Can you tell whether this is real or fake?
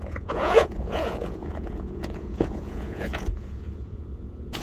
fake